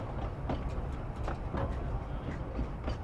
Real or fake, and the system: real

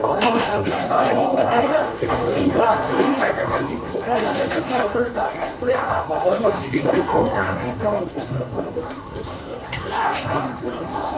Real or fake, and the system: fake, codec, SNAC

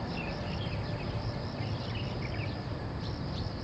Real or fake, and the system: fake, vocoder, BigVGAN v2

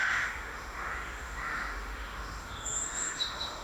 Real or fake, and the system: fake, autoencoder, DAC-VAE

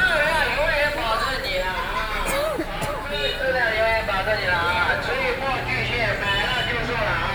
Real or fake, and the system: real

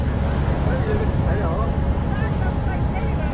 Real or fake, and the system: fake, vocoder, BigVGAN v2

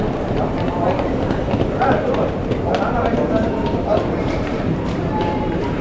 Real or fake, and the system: fake, vocoder, BigVGAN v2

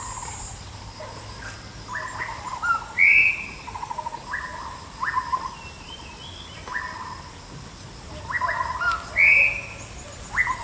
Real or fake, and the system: real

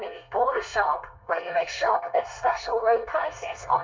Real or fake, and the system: fake, codec, SNAC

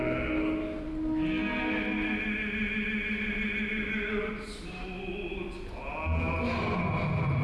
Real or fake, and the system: real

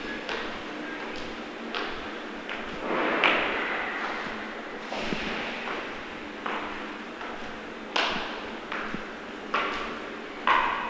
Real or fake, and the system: real